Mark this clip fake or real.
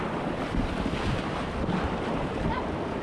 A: real